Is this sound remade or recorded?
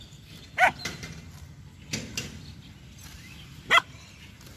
recorded